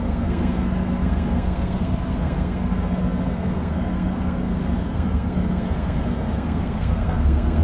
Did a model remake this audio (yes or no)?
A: yes